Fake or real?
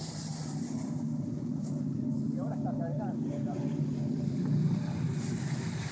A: fake